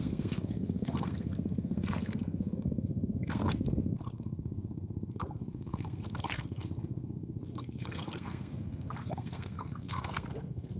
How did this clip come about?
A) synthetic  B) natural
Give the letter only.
A